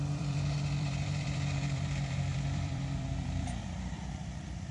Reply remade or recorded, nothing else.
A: remade